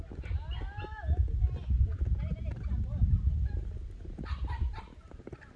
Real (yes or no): yes